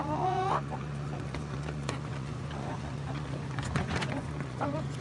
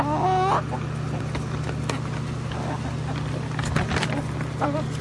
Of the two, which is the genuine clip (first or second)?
second